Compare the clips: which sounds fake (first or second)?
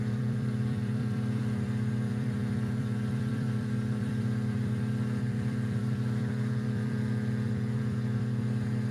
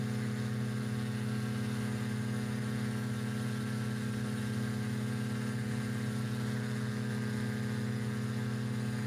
first